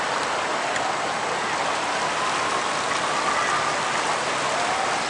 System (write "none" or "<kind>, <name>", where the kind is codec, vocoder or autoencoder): none